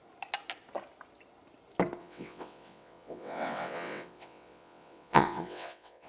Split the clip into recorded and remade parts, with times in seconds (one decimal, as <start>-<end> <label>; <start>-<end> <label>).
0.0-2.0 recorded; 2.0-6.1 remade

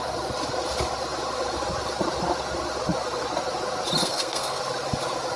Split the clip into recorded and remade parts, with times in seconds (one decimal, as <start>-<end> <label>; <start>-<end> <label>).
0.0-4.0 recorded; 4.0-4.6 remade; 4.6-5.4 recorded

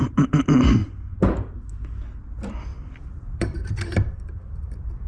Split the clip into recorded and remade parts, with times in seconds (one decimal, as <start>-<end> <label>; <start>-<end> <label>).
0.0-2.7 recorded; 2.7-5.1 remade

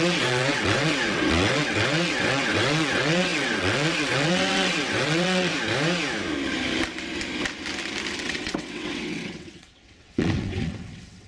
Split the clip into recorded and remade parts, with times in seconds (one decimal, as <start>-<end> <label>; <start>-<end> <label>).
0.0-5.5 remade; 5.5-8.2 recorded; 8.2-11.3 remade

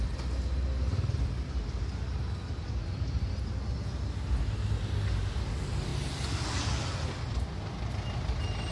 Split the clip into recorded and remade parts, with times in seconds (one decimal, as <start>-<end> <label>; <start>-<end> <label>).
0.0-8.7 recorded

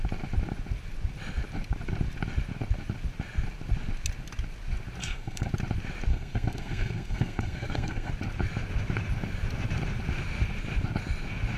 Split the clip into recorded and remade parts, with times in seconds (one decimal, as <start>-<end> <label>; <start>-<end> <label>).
0.0-5.0 recorded; 5.0-5.5 remade; 5.5-6.1 recorded; 6.1-8.1 remade; 8.1-11.6 recorded

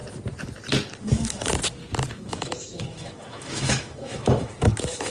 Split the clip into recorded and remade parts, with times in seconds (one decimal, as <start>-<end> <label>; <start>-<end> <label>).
0.0-1.0 recorded; 1.0-1.5 remade; 1.5-2.1 recorded; 2.1-5.1 remade